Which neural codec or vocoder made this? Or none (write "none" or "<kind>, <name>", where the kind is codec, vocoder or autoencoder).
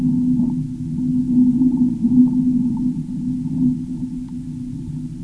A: none